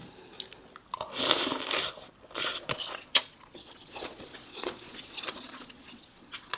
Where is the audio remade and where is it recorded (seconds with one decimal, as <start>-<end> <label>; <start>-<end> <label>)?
0.0-2.5 recorded; 2.5-6.6 remade